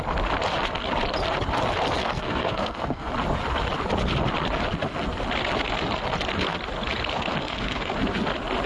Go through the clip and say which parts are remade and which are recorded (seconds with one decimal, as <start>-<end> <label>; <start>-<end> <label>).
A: 0.0-2.0 recorded; 2.0-3.1 remade; 3.1-7.4 recorded; 7.4-7.9 remade; 7.9-8.7 recorded